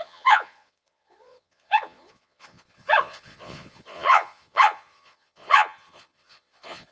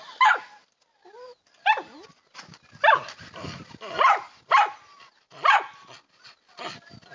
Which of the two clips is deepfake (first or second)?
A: first